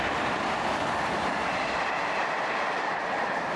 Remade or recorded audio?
recorded